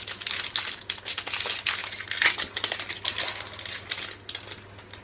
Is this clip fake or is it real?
real